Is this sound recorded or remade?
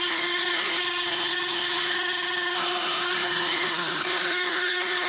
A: remade